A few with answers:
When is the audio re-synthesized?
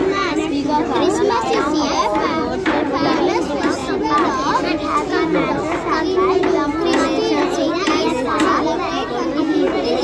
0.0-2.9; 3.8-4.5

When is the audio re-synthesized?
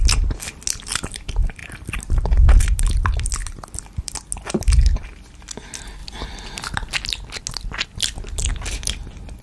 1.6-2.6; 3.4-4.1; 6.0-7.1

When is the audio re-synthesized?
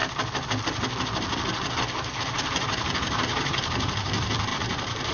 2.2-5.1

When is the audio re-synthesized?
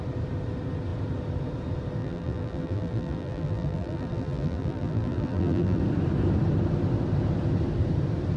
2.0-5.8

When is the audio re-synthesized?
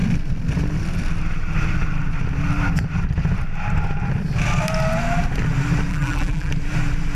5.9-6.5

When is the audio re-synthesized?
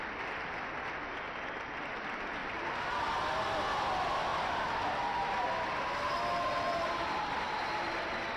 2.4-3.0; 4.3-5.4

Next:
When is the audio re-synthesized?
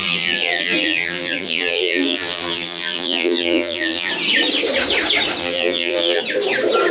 0.0-4.1; 5.4-6.2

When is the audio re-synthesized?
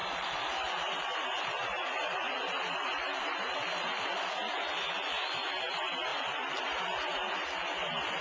0.0-2.5; 6.1-6.6